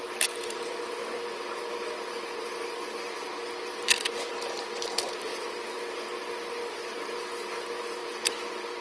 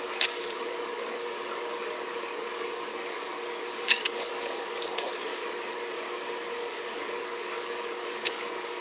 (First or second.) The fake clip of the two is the second